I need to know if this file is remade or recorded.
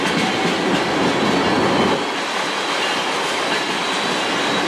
recorded